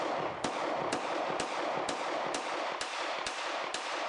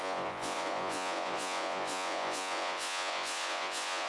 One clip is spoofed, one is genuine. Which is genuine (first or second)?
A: first